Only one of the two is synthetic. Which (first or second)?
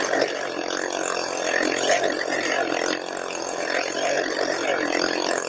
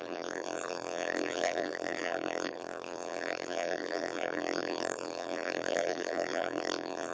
second